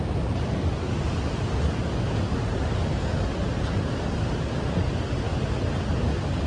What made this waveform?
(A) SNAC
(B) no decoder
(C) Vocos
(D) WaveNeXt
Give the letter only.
B